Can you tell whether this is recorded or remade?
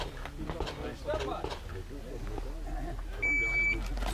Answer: recorded